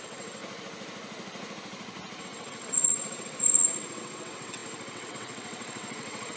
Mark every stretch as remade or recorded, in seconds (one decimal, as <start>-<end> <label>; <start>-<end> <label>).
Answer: 0.0-0.4 remade; 0.4-2.2 recorded; 2.2-6.4 remade